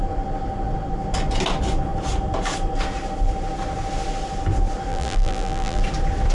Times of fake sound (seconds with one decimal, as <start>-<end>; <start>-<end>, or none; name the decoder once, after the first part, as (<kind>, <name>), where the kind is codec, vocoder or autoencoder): 4.9-5.8 (vocoder, BigVGAN v2)